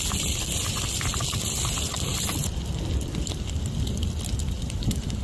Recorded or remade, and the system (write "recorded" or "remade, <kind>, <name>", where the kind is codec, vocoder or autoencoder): remade, vocoder, BigVGAN v2